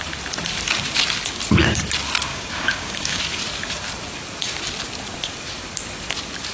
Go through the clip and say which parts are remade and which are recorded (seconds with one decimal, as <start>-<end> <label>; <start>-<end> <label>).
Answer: 0.0-2.3 recorded; 2.3-3.2 remade; 3.2-6.5 recorded